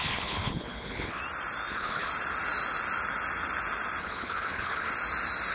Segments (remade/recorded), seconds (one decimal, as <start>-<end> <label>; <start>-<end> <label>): 0.0-1.2 remade; 1.2-1.7 recorded; 1.7-2.1 remade; 2.1-4.0 recorded; 4.0-4.9 remade; 4.9-5.5 recorded

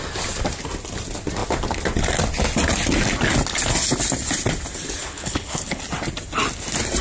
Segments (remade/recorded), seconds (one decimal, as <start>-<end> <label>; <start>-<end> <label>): 0.0-5.0 recorded; 5.0-5.8 remade; 5.8-7.0 recorded

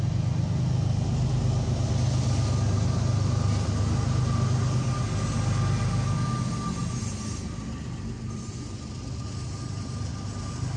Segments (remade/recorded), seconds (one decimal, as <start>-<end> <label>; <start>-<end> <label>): 0.0-10.8 recorded